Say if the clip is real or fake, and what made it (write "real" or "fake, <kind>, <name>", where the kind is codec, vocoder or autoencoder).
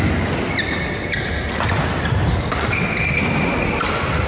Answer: real